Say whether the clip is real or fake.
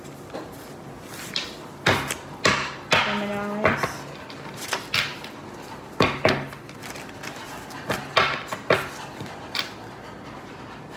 real